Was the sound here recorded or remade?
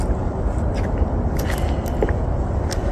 recorded